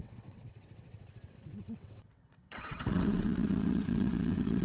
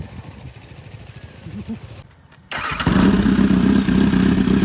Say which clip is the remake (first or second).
first